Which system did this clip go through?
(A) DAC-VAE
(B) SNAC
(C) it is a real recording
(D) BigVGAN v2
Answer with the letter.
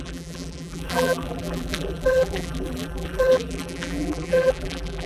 D